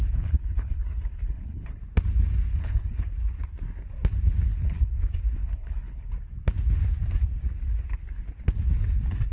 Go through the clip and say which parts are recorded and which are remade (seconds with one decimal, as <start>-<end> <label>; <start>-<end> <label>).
0.0-1.8 remade; 1.8-2.5 recorded; 2.5-3.1 remade; 3.1-4.5 recorded; 4.5-5.0 remade; 5.0-5.4 recorded; 5.4-6.1 remade; 6.1-9.3 recorded